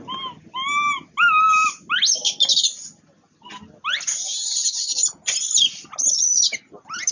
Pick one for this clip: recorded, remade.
recorded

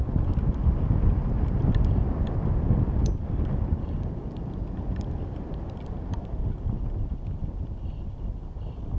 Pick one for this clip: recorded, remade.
recorded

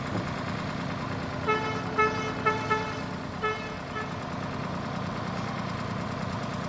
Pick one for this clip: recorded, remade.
recorded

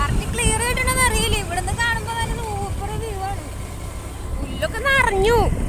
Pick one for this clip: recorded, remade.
recorded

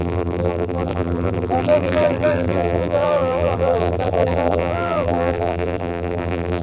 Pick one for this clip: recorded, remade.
remade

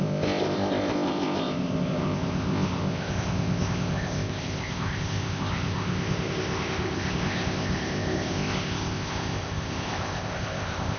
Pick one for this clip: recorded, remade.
remade